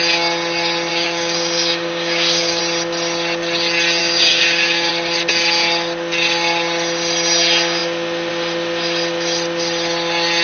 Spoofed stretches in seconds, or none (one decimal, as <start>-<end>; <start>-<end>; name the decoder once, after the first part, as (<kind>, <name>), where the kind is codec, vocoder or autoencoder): 0.9-2.6 (codec, DAC); 4.0-4.9